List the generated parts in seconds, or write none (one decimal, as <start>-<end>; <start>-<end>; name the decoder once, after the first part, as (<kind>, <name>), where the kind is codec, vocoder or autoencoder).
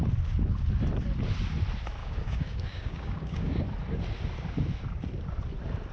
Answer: 2.0-3.6 (codec, DAC)